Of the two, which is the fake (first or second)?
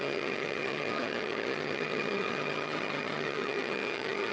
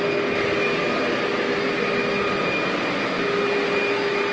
first